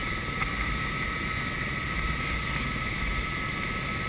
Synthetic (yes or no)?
no